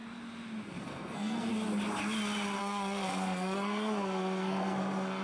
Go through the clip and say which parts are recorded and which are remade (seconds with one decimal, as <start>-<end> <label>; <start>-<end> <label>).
0.0-0.8 recorded; 0.8-1.5 remade; 1.5-2.6 recorded; 2.6-5.2 remade